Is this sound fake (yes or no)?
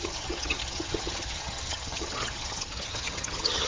yes